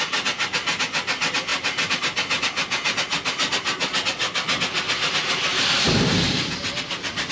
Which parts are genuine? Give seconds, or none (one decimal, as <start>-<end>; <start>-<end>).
0.0-1.5; 2.0-5.5; 6.5-7.3